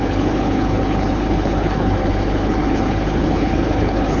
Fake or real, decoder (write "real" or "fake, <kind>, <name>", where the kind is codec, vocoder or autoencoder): fake, codec, HILCodec